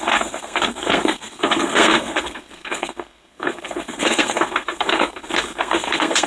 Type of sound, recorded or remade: remade